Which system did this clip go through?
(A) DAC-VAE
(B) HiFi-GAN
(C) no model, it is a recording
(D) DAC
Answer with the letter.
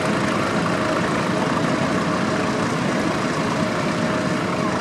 C